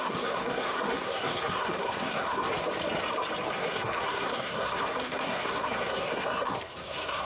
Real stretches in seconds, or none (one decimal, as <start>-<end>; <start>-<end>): 2.5-3.5